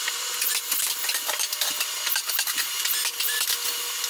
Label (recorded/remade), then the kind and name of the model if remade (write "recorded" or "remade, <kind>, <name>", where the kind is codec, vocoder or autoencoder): recorded